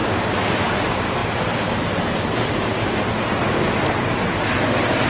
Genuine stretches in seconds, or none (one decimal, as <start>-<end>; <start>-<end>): 0.0-1.2; 3.1-5.1